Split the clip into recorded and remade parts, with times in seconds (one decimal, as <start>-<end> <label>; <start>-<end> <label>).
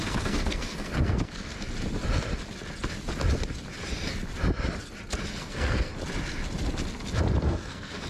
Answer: 0.0-1.5 remade; 1.5-5.3 recorded; 5.3-5.9 remade; 5.9-7.4 recorded; 7.4-8.1 remade